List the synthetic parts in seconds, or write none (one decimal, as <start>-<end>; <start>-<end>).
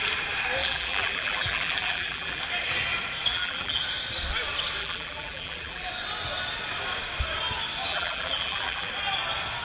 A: 0.6-2.4; 3.3-3.8; 4.8-5.9; 7.9-8.9